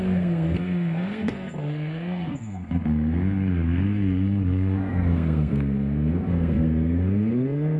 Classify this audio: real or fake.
fake